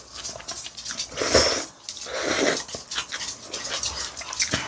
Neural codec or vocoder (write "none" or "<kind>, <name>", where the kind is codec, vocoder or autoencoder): none